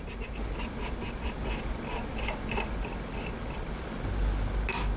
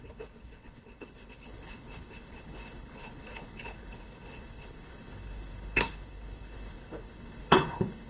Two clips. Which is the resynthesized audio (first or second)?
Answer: second